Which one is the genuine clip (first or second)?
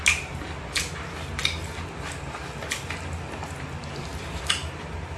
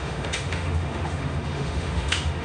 first